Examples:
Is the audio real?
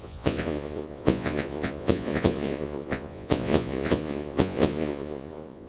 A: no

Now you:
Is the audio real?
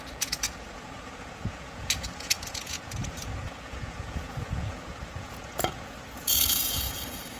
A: no